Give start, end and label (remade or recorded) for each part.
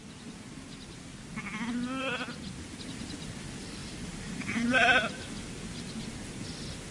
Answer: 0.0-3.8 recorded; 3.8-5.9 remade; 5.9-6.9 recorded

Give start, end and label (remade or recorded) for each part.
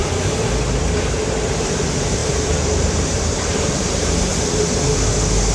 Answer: 0.0-0.8 recorded; 0.8-4.3 remade; 4.3-5.5 recorded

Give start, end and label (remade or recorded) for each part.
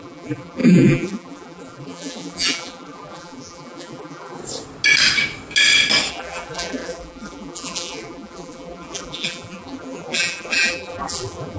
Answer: 0.0-4.4 remade; 4.4-6.1 recorded; 6.1-11.6 remade